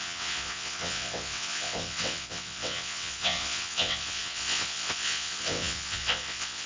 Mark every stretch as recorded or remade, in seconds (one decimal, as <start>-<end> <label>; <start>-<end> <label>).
0.0-6.7 remade